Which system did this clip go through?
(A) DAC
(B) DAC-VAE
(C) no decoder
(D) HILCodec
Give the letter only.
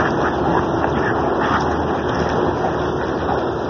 C